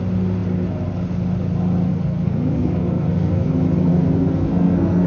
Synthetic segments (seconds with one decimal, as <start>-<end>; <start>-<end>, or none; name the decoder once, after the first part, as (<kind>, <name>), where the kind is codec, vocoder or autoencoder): 1.9-3.5 (codec, SNAC); 3.9-5.1

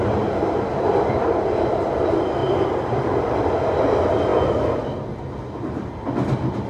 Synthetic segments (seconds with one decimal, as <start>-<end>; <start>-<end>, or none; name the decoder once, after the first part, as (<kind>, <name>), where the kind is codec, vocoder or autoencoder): none